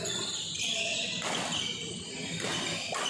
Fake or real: real